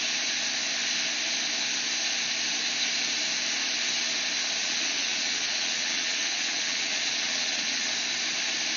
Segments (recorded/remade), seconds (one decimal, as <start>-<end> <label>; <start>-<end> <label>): 0.0-4.6 recorded; 4.6-7.9 remade; 7.9-8.8 recorded